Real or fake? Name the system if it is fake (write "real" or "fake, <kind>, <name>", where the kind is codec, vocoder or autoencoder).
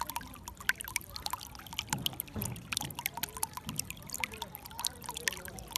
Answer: real